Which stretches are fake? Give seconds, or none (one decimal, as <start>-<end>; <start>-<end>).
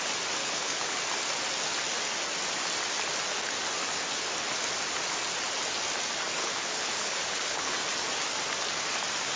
0.4-1.0; 6.4-7.8